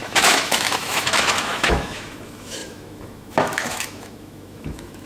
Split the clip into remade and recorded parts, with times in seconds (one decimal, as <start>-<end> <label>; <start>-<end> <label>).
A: 0.0-5.1 remade